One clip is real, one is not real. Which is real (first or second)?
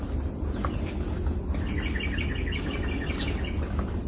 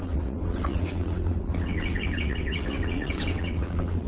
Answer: first